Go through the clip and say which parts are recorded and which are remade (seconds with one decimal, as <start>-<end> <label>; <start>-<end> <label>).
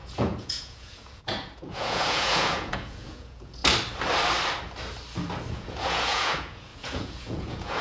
0.0-3.6 remade; 3.6-5.5 recorded; 5.5-7.8 remade